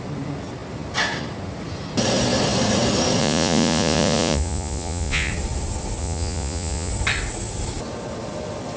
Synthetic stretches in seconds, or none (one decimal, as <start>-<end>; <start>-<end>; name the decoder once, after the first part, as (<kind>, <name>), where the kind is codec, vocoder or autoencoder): 3.2-5.3 (vocoder, Vocos); 6.0-6.9